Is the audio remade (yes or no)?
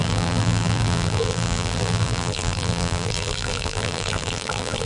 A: yes